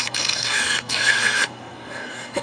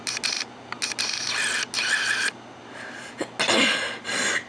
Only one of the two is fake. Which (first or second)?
first